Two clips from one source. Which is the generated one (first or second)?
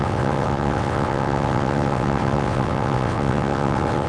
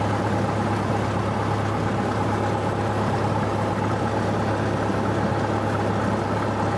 first